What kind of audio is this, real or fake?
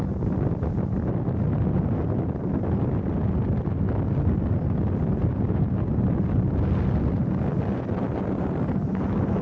real